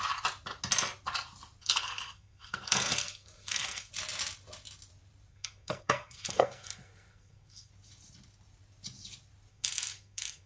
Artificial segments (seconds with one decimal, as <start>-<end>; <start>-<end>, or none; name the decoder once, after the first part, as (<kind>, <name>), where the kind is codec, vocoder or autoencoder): 1.6-3.9 (codec, SNAC); 5.3-7.7; 9.5-10.5